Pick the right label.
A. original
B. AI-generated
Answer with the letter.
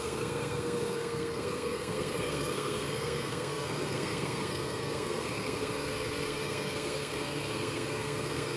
B